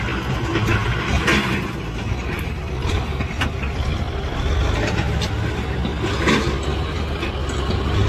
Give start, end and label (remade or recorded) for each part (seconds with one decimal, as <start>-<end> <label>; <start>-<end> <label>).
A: 0.0-2.2 recorded; 2.2-5.3 remade; 5.3-8.1 recorded

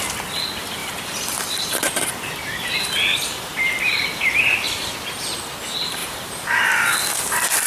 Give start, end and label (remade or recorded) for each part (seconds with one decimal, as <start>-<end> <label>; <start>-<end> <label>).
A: 0.0-0.8 recorded; 0.8-2.1 remade; 2.1-6.0 recorded; 6.0-6.6 remade; 6.6-7.7 recorded

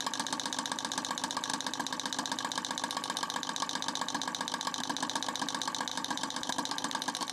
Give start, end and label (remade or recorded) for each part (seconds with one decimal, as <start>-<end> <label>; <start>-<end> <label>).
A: 0.0-5.9 recorded; 5.9-6.5 remade; 6.5-7.3 recorded

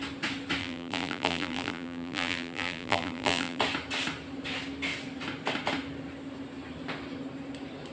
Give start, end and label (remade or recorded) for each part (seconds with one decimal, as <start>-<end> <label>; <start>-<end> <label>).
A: 0.0-0.6 recorded; 0.6-3.6 remade; 3.6-7.9 recorded